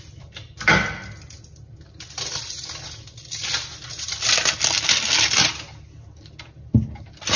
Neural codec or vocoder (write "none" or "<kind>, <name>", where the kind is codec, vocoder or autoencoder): none